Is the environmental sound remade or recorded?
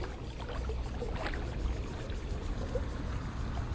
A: recorded